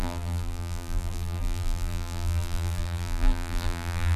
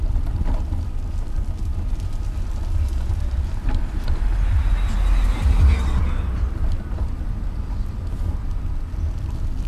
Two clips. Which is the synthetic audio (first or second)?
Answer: first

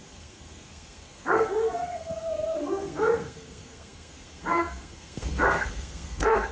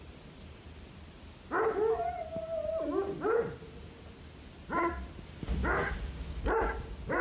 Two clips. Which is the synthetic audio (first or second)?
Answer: first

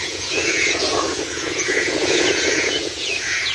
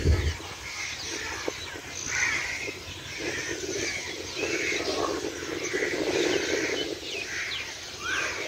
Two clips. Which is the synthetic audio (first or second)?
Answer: first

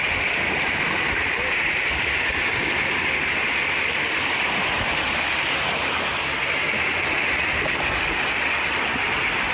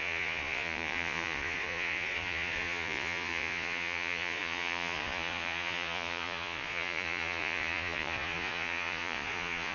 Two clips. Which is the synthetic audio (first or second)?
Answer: second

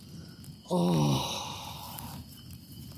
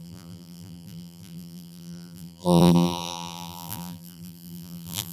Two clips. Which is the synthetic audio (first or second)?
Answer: second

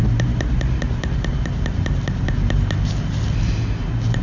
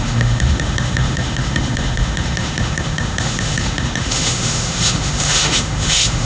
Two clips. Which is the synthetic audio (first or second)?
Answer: second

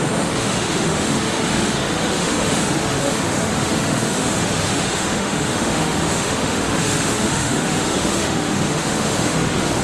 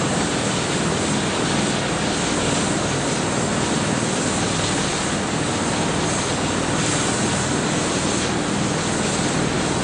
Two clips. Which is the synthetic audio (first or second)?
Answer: first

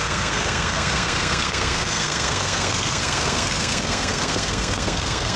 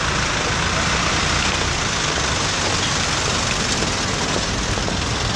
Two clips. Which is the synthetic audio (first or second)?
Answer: first